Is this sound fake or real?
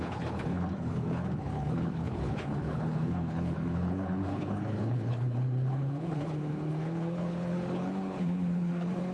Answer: fake